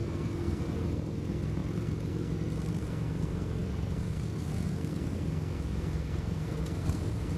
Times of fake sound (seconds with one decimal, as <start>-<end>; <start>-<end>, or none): 0.0-7.4